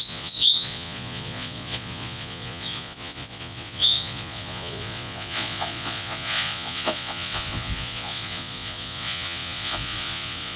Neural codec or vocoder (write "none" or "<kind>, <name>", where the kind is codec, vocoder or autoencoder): vocoder, Vocos